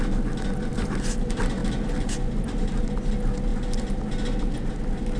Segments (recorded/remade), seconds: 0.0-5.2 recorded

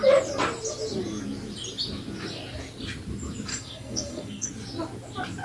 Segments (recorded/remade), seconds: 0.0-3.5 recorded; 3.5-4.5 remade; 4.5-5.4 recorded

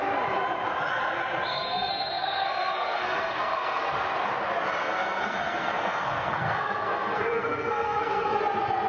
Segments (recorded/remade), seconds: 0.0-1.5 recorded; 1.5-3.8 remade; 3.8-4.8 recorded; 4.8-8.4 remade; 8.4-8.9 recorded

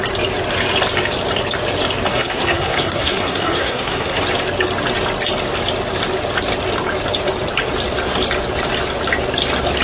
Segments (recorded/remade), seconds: 0.0-2.1 recorded; 2.1-4.2 remade; 4.2-9.8 recorded